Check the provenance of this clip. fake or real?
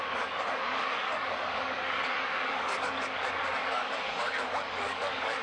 fake